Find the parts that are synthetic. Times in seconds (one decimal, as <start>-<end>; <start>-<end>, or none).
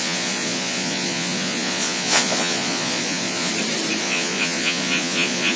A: 0.0-3.5; 4.0-5.6